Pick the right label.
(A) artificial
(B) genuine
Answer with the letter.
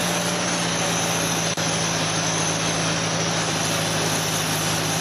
B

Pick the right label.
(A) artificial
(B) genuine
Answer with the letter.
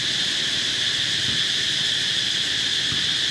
B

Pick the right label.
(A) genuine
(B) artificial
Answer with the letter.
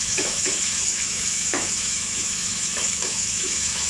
B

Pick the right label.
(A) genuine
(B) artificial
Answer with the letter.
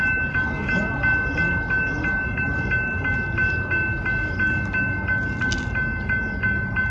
A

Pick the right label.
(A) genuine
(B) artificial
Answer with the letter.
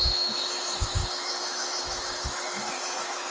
B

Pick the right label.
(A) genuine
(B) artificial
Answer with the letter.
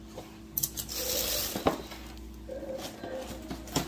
A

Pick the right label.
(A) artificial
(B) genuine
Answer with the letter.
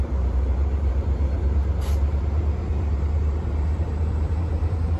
A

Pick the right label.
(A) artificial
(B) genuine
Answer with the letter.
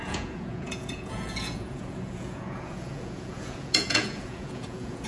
A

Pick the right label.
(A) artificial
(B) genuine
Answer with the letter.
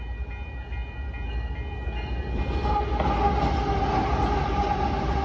B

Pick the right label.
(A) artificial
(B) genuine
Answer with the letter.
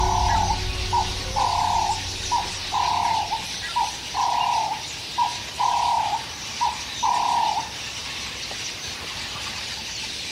B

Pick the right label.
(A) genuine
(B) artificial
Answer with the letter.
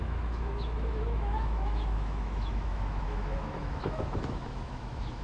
B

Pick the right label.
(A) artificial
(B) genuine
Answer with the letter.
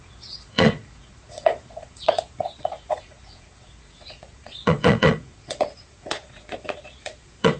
A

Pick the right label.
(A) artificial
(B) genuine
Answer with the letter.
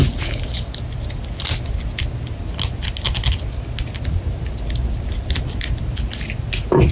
B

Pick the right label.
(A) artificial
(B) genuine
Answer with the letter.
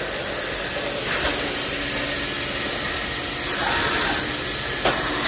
B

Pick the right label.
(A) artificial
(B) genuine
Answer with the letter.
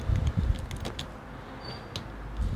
B